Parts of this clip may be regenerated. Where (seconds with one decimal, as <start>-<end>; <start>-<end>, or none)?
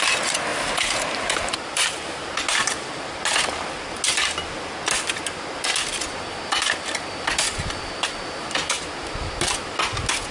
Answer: 0.5-2.4